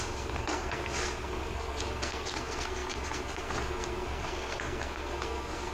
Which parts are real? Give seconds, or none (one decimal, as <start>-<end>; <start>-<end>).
none